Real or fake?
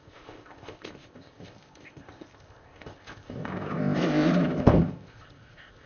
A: fake